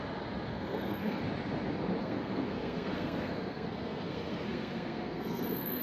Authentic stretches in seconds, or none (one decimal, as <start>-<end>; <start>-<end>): 0.0-0.5; 1.2-2.0